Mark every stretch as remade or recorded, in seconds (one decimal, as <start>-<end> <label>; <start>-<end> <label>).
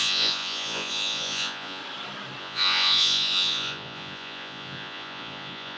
0.0-1.8 remade; 1.8-2.4 recorded; 2.4-5.8 remade